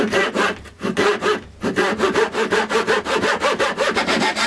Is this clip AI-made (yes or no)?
yes